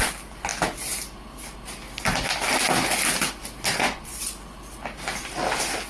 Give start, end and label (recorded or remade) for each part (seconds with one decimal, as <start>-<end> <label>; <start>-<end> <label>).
0.0-3.7 recorded; 3.7-4.2 remade; 4.2-5.9 recorded